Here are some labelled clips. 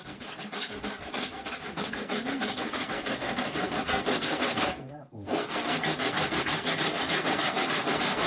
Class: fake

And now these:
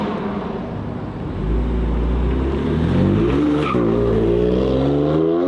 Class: real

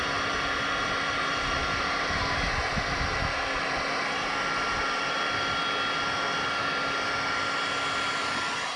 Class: real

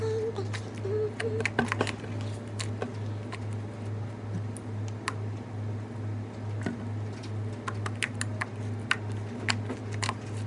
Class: real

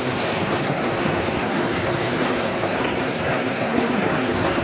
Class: fake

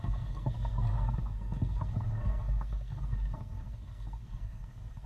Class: fake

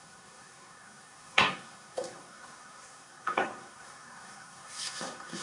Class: fake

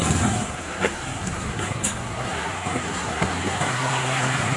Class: fake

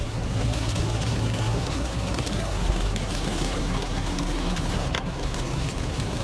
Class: fake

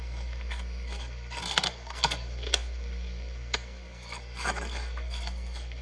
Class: fake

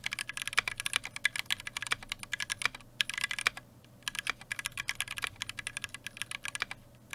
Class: real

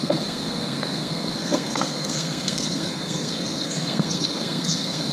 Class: fake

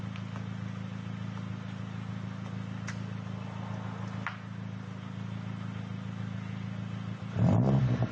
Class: real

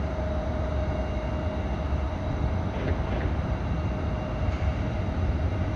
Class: real